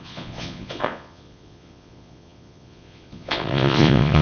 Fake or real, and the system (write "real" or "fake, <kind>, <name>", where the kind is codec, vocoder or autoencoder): fake, vocoder, Vocos